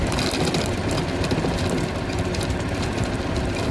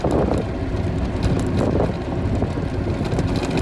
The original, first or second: second